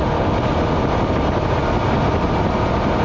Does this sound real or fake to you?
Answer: real